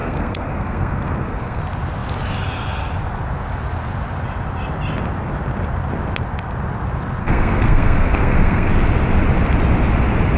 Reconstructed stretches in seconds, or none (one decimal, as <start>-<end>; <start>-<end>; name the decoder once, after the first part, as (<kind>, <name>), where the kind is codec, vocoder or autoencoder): 0.0-1.6 (codec, SNAC); 7.2-8.7